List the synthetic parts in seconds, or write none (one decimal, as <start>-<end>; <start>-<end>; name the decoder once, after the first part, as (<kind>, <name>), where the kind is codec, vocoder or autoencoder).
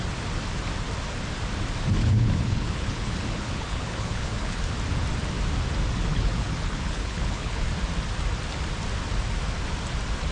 2.0-4.6 (codec, HILCodec); 6.1-7.6